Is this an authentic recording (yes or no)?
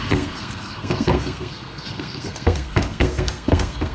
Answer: no